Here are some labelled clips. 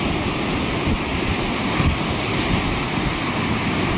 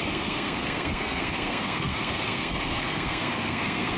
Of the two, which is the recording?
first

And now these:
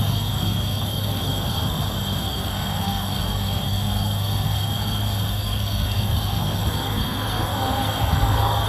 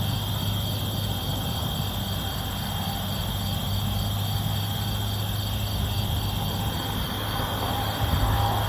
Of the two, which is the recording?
second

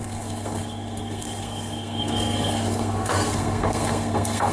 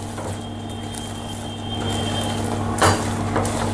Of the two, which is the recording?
second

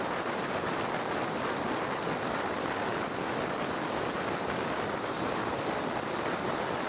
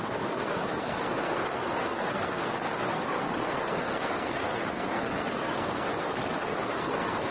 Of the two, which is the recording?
first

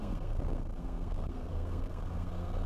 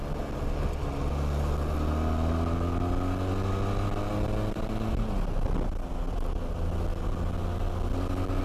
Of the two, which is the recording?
second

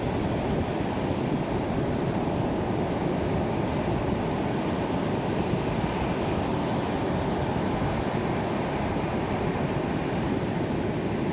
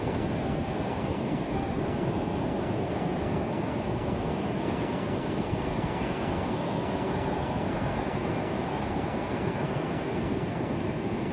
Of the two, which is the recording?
first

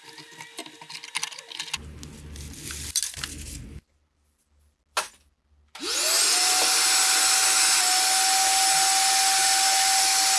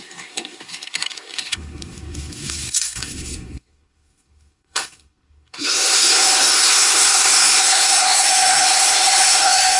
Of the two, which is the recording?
first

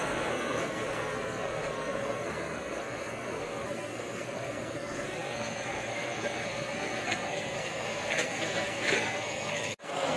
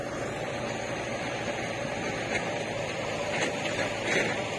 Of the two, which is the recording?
second